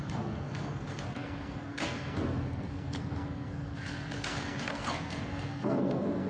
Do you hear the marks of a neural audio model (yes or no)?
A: yes